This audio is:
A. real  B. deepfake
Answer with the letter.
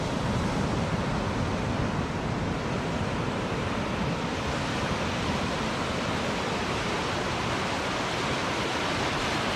B